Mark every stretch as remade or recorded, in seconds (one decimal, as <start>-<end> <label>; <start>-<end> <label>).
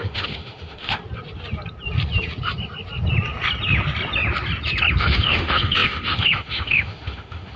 0.0-1.0 remade; 1.0-5.0 recorded; 5.0-7.6 remade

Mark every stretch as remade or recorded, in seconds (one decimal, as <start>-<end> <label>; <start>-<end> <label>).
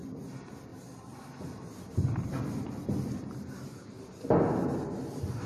0.0-5.5 recorded